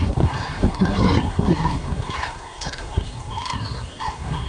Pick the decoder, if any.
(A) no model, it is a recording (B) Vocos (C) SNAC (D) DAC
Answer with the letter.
C